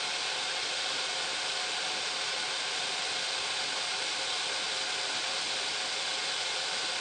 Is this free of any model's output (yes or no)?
yes